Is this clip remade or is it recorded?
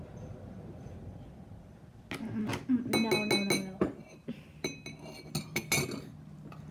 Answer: recorded